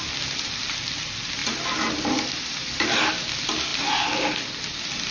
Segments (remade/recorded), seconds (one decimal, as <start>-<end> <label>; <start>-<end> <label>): 0.0-5.1 recorded